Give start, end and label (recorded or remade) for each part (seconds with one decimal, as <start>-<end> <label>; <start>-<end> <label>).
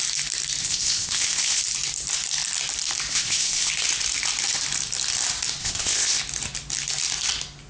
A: 0.0-0.6 recorded; 0.6-1.6 remade; 1.6-3.1 recorded; 3.1-3.7 remade; 3.7-5.6 recorded; 5.6-6.2 remade; 6.2-7.7 recorded